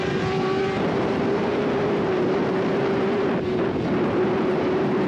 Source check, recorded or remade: remade